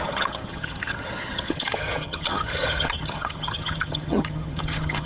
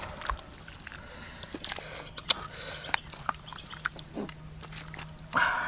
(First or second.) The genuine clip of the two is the second